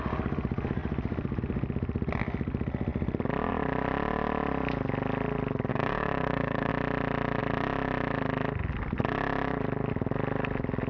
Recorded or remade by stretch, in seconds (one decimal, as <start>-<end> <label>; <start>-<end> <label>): 0.0-5.7 recorded; 5.7-6.7 remade; 6.7-10.9 recorded